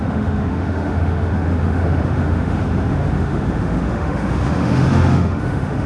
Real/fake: fake